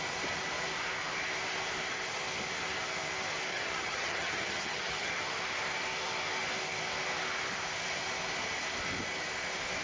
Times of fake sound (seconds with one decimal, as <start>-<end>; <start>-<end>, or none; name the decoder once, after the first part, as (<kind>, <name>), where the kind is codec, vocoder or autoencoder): 3.5-5.1 (vocoder, HiFi-GAN)